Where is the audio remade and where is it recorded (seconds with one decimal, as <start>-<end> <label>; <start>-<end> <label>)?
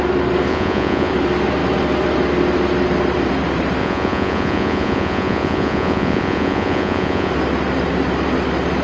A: 0.0-0.5 recorded; 0.5-1.1 remade; 1.1-3.8 recorded; 3.8-7.3 remade; 7.3-8.8 recorded